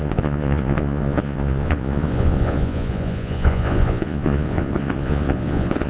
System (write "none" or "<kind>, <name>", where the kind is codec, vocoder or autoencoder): vocoder, Vocos